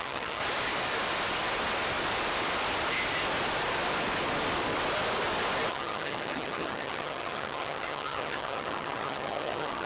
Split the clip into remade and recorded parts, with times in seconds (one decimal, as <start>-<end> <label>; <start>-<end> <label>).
0.0-0.4 remade; 0.4-5.7 recorded; 5.7-9.9 remade